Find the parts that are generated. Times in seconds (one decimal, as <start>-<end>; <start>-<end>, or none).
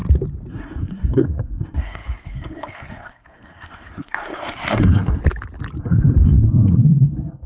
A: 0.5-5.2; 5.8-7.5